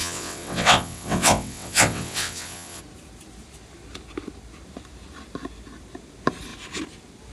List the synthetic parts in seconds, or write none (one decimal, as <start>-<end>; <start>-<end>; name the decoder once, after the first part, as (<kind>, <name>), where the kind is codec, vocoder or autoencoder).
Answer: 0.0-2.8 (vocoder, WaveNeXt)